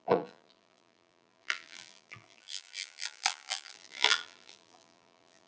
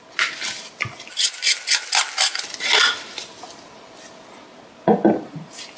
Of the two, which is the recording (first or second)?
second